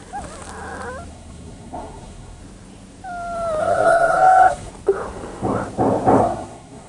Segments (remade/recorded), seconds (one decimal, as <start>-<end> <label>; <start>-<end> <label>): 0.0-1.1 recorded; 1.1-2.4 remade; 2.4-3.6 recorded; 3.6-4.7 remade; 4.7-6.2 recorded; 6.2-6.9 remade